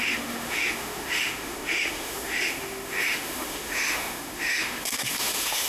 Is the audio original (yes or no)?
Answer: no